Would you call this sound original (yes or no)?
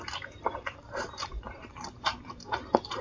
no